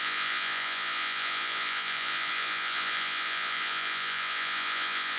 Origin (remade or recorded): remade